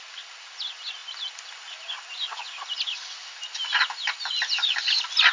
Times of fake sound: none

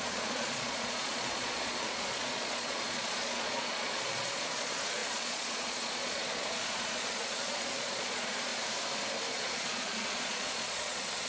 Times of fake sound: 0.0-8.5 (vocoder, Vocos); 9.3-11.3

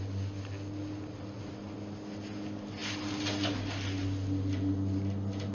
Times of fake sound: none

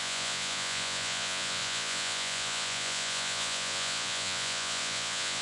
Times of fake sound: 0.0-5.4 (vocoder, Vocos)

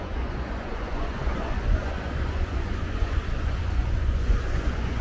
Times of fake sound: 0.0-5.0 (vocoder, Vocos)

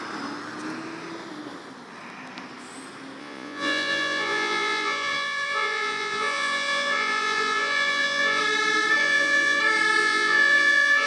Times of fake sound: 3.2-8.4 (vocoder, Vocos); 9.0-9.6; 10.0-11.1

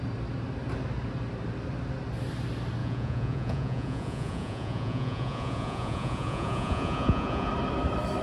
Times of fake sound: 2.8-7.5 (vocoder, Vocos)